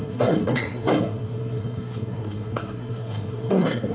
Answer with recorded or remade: remade